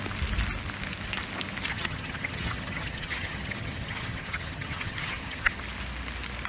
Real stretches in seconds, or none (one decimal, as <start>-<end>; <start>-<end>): 0.0-1.7; 5.6-6.5